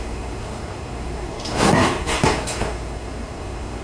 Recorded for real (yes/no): no